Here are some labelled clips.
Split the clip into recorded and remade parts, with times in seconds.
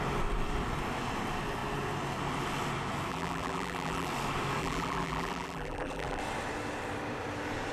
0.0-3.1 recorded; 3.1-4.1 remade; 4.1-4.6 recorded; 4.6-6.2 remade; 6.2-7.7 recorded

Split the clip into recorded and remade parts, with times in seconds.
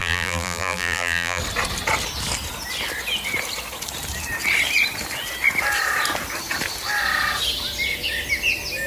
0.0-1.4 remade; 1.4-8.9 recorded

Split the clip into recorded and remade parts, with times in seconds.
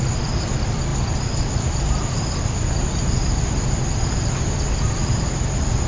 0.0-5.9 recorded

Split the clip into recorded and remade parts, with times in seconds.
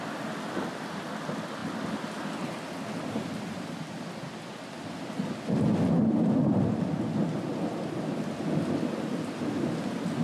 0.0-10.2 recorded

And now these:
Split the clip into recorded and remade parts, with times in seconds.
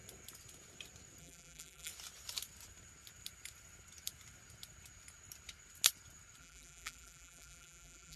0.0-1.2 recorded; 1.2-1.9 remade; 1.9-6.4 recorded; 6.4-8.2 remade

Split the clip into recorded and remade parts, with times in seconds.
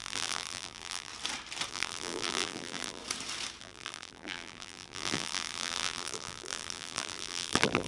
0.0-1.1 remade; 1.1-1.7 recorded; 1.7-3.0 remade; 3.0-3.6 recorded; 3.6-7.9 remade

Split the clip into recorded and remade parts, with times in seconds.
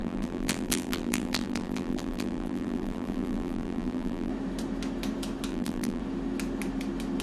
0.0-4.3 remade; 4.3-5.5 recorded; 5.5-6.0 remade; 6.0-7.2 recorded